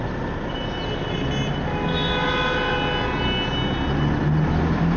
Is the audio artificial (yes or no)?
no